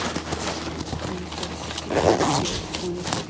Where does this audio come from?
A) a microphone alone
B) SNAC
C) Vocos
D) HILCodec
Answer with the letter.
A